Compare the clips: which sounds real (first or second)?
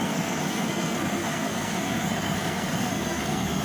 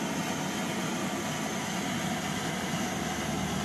second